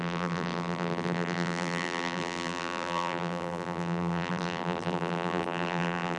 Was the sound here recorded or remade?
remade